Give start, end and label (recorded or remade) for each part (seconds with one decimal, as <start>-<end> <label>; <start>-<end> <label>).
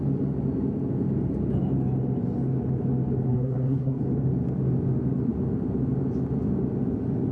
0.0-3.3 recorded; 3.3-4.0 remade; 4.0-7.3 recorded